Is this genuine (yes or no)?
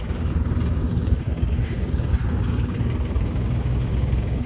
no